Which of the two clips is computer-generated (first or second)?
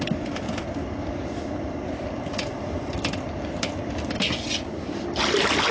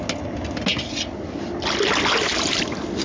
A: first